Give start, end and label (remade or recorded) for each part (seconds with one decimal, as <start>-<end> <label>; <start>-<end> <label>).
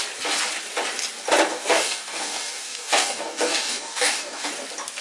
0.0-1.5 recorded; 1.5-4.5 remade; 4.5-5.0 recorded